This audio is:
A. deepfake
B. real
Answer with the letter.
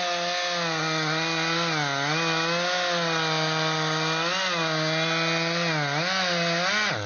B